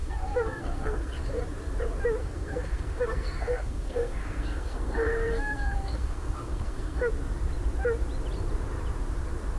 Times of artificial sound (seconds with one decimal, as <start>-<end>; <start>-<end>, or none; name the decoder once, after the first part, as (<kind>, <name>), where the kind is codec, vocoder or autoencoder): 0.0-1.4 (codec, SNAC); 2.2-7.1